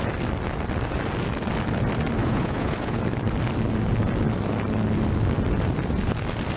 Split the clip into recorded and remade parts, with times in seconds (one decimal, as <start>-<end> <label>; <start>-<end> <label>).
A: 0.0-2.2 recorded; 2.2-3.0 remade; 3.0-6.6 recorded

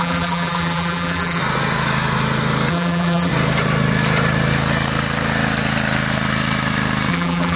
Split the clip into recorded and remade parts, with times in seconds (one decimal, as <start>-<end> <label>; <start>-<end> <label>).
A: 0.0-1.4 remade; 1.4-2.7 recorded; 2.7-3.3 remade; 3.3-7.1 recorded; 7.1-7.6 remade

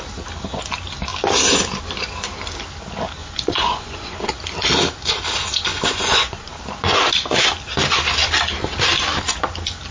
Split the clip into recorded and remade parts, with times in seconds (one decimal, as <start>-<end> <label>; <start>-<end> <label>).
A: 0.0-3.2 recorded; 3.2-4.3 remade; 4.3-5.7 recorded; 5.7-6.5 remade; 6.5-9.9 recorded

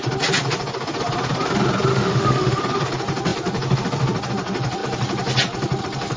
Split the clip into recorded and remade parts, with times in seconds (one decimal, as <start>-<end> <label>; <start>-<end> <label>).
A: 0.0-1.9 recorded; 1.9-2.6 remade; 2.6-6.2 recorded